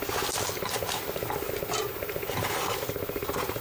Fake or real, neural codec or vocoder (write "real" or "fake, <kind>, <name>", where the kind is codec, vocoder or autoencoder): real